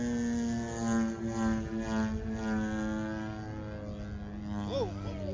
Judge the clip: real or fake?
real